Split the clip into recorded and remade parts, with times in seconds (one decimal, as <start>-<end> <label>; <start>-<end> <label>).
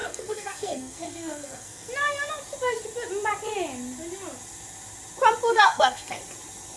0.0-1.9 remade; 1.9-5.5 recorded; 5.5-6.2 remade; 6.2-6.8 recorded